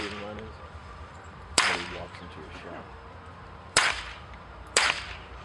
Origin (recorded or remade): remade